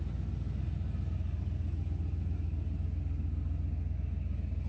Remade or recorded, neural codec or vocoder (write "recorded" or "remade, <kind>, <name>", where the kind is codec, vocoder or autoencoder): recorded